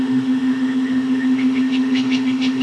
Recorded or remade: remade